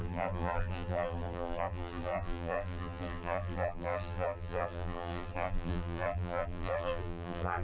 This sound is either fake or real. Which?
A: fake